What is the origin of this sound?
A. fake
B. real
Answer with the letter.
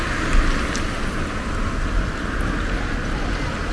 B